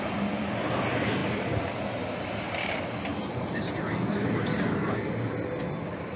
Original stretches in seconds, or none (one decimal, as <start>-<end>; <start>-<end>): 0.0-6.2